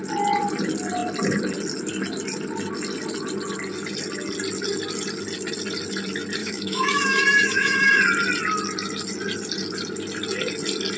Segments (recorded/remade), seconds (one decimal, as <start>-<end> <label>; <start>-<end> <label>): 0.0-6.4 recorded; 6.4-8.0 remade; 8.0-11.0 recorded